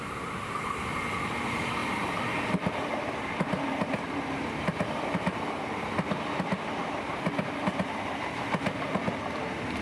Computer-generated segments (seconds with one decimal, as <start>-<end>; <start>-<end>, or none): 1.8-5.5